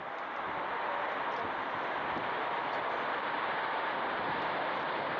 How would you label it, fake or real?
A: real